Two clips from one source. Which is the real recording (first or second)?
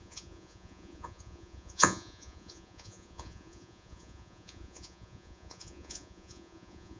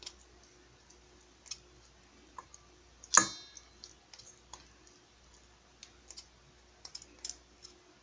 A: second